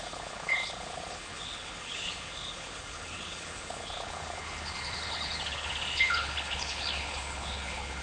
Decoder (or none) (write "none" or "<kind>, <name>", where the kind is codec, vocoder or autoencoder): codec, HILCodec